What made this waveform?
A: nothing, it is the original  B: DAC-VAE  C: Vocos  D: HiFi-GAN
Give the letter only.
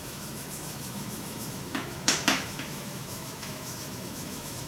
B